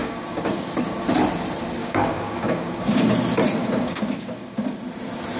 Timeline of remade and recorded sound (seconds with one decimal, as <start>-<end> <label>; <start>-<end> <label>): 0.0-0.7 remade; 0.7-1.8 recorded; 1.8-3.1 remade; 3.1-3.6 recorded; 3.6-4.7 remade; 4.7-5.4 recorded